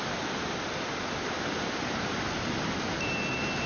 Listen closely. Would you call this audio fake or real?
fake